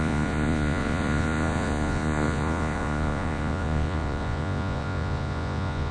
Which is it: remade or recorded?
remade